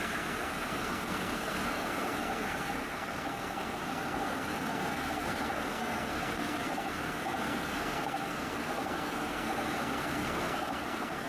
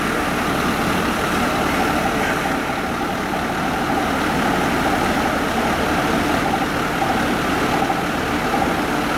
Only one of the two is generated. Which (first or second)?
first